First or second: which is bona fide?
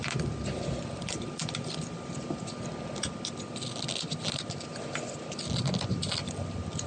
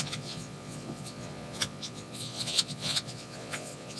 first